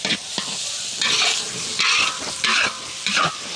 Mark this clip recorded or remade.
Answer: recorded